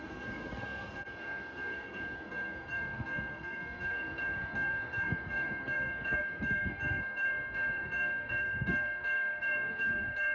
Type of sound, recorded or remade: remade